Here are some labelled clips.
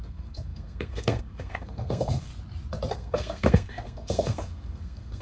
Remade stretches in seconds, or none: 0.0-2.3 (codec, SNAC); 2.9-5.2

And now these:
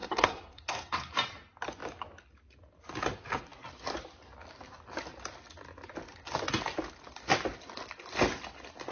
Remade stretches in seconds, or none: 0.0-1.1 (codec, SNAC)

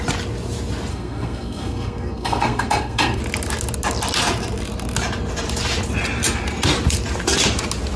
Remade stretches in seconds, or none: 0.9-3.2 (codec, SNAC)

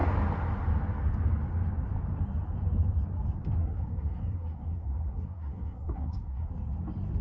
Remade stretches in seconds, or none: 3.6-6.5 (codec, SNAC)